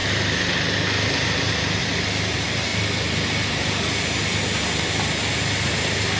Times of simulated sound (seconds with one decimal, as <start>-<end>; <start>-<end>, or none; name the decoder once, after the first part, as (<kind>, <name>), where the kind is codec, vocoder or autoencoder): none